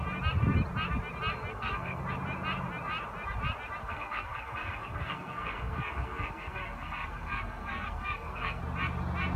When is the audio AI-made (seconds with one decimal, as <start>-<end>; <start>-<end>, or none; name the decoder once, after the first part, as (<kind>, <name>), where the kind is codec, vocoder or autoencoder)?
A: 1.5-2.0 (codec, SNAC); 3.8-8.6